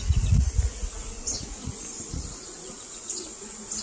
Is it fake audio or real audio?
fake